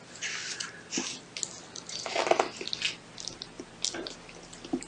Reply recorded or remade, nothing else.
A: recorded